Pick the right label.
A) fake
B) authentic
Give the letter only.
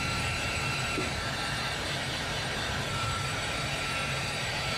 A